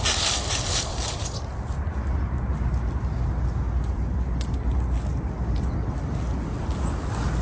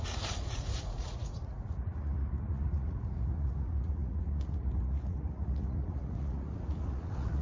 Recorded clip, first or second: first